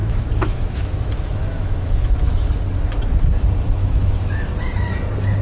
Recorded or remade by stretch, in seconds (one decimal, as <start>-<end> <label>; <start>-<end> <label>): 0.0-2.5 remade; 2.5-3.8 recorded; 3.8-4.5 remade; 4.5-5.4 recorded